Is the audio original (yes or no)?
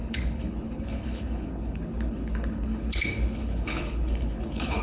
no